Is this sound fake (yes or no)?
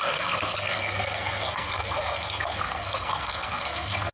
yes